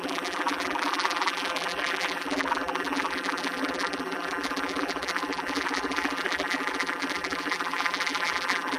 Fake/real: fake